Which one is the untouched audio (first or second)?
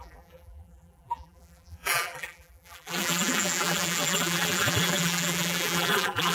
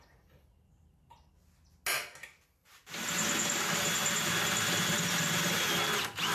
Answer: second